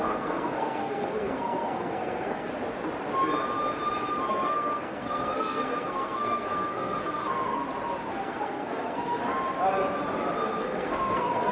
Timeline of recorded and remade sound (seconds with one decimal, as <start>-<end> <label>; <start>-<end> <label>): 0.0-2.5 remade; 2.5-4.3 recorded; 4.3-7.6 remade; 7.6-8.1 recorded; 8.1-9.2 remade; 9.2-10.6 recorded; 10.6-11.5 remade